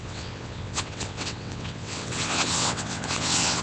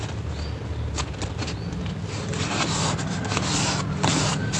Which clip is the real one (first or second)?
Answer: second